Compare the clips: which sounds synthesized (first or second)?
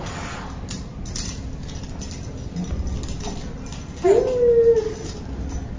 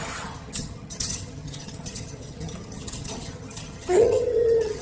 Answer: second